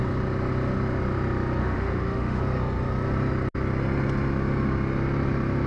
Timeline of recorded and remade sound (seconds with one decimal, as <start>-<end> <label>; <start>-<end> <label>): 0.0-1.6 recorded; 1.6-2.4 remade; 2.4-5.7 recorded